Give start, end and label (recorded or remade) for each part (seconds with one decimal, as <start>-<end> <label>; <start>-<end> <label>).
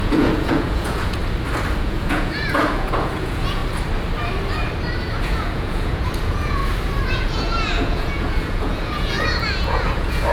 0.0-1.2 remade; 1.2-1.8 recorded; 1.8-3.6 remade; 3.6-5.2 recorded; 5.2-6.6 remade; 6.6-7.1 recorded; 7.1-10.3 remade